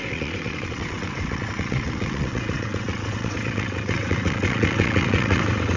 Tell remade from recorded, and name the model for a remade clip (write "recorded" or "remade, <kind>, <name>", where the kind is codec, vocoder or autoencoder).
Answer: remade, vocoder, WaveNeXt